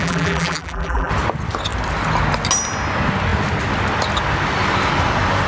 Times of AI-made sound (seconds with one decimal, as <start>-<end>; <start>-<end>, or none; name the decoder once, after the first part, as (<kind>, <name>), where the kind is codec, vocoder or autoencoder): 0.0-1.1 (vocoder, BigVGAN v2)